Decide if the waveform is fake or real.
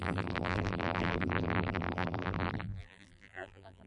fake